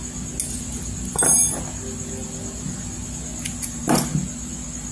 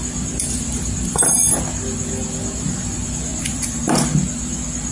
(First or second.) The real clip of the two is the first